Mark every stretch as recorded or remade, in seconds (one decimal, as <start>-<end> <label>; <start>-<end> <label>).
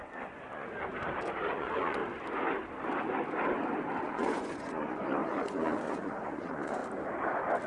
0.0-0.9 remade; 0.9-1.5 recorded; 1.5-2.0 remade; 2.0-4.0 recorded; 4.0-6.8 remade; 6.8-7.7 recorded